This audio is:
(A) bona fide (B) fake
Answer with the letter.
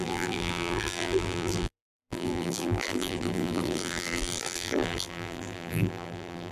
B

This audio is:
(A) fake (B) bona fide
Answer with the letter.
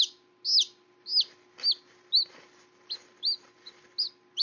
B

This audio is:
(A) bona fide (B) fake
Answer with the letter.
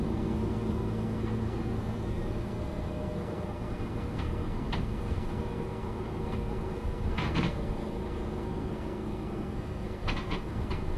B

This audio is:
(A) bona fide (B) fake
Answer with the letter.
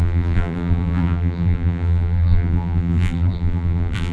B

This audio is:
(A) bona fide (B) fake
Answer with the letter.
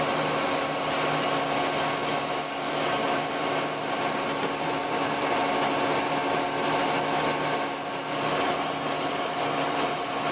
A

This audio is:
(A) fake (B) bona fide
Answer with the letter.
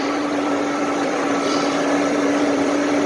A